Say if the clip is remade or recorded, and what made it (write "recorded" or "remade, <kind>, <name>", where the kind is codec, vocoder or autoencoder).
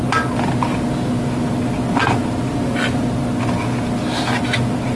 recorded